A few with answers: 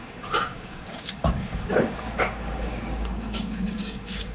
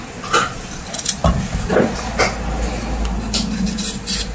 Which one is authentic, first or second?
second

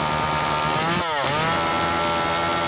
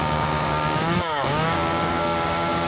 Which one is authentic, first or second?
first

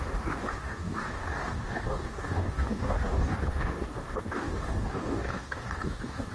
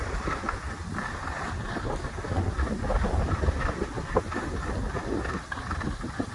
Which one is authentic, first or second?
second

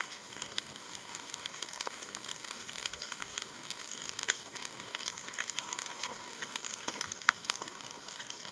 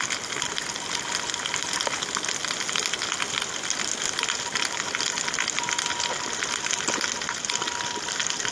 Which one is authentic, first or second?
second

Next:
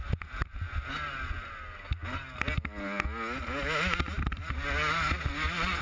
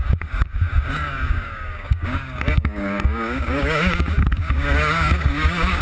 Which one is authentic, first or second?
first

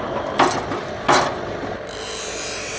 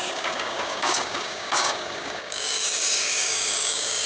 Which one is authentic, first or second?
first